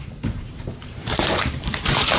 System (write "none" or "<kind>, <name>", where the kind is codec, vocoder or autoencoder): vocoder, BigVGAN v2